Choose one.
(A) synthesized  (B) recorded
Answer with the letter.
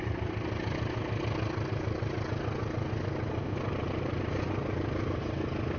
B